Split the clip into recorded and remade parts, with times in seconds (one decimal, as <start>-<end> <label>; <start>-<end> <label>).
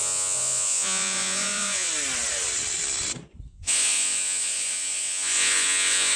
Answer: 0.0-1.9 remade; 1.9-3.5 recorded; 3.5-6.2 remade